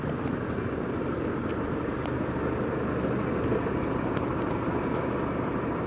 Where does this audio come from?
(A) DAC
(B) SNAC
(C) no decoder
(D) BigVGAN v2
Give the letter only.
C